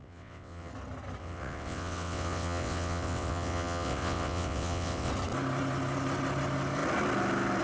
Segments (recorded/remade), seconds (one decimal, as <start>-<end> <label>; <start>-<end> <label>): 0.0-0.7 remade; 0.7-1.2 recorded; 1.2-5.1 remade; 5.1-7.6 recorded

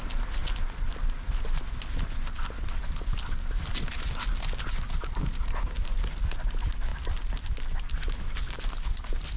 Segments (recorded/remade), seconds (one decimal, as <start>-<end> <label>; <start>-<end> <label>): 0.0-9.4 recorded

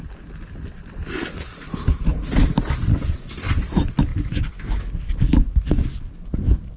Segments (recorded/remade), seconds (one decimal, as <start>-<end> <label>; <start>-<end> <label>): 0.0-6.8 recorded

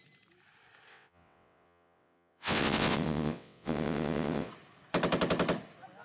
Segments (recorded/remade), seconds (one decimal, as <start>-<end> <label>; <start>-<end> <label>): 0.0-0.9 recorded; 0.9-4.5 remade; 4.5-6.0 recorded

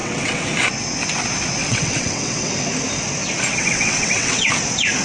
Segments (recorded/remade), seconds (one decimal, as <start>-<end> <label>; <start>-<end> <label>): 0.0-0.5 remade; 0.5-1.6 recorded; 1.6-2.5 remade; 2.5-3.5 recorded; 3.5-4.5 remade; 4.5-5.0 recorded

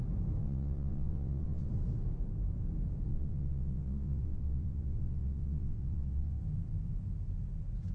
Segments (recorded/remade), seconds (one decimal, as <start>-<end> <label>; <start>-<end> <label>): 0.0-0.4 recorded; 0.4-1.7 remade; 1.7-3.1 recorded; 3.1-6.4 remade; 6.4-7.9 recorded

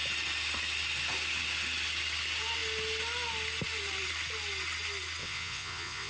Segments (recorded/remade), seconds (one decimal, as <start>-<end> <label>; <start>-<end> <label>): 0.0-5.2 recorded; 5.2-6.1 remade